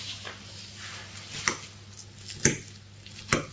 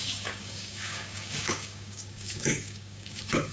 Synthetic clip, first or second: second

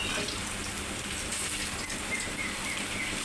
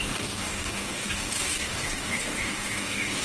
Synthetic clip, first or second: second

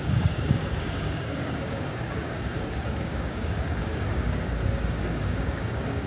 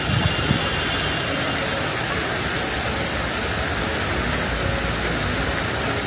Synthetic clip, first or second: first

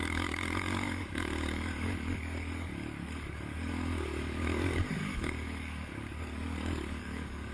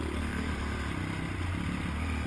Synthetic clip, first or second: first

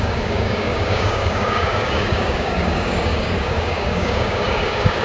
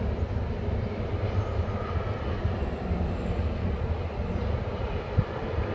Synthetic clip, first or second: first